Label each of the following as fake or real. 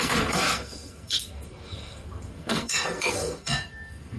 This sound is fake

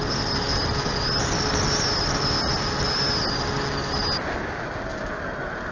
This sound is real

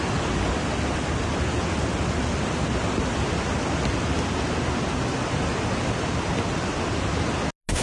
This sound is real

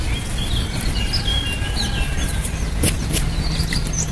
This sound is real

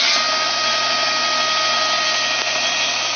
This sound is real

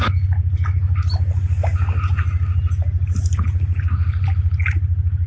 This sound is real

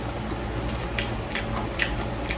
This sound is real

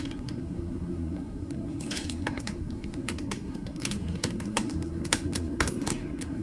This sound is fake